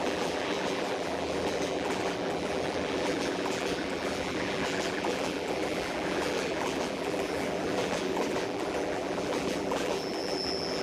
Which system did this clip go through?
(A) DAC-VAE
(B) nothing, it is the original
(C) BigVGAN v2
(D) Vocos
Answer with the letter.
C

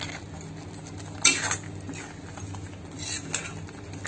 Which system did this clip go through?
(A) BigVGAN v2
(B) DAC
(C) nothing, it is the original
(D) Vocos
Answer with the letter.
C